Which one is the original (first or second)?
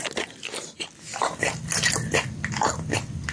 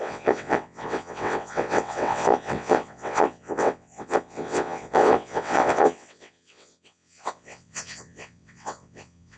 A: first